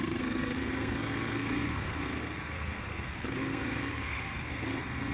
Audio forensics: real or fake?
fake